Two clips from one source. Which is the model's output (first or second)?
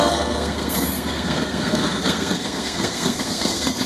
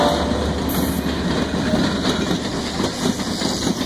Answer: first